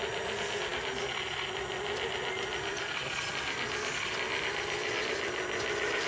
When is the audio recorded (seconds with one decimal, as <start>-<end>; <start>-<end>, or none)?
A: 0.0-6.1